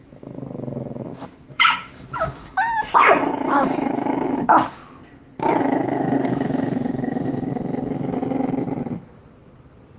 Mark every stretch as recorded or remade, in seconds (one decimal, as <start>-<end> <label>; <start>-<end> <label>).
0.0-4.8 remade; 4.8-5.6 recorded; 5.6-8.2 remade; 8.2-10.0 recorded